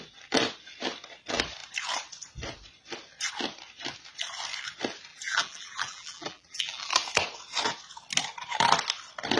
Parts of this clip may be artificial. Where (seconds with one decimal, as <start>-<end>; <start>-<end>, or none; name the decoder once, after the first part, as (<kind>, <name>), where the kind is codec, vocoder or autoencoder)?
5.1-6.9 (vocoder, BigVGAN v2)